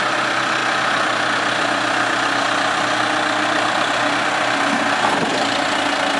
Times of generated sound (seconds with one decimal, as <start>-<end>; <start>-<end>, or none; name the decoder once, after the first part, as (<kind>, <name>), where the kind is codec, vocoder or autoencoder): none